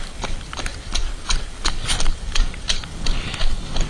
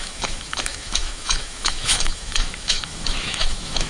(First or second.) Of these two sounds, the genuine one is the first